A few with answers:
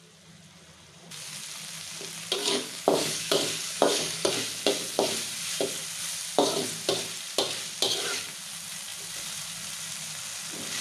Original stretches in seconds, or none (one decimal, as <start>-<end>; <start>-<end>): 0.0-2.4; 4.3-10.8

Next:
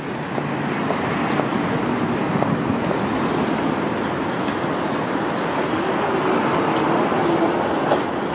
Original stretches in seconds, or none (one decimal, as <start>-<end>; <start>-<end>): 0.0-8.3

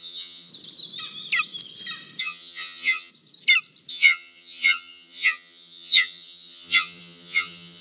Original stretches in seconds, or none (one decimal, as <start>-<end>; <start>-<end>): 0.5-2.2; 3.1-3.9

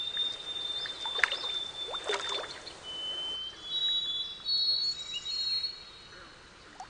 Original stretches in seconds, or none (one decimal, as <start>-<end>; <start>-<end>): 0.0-6.9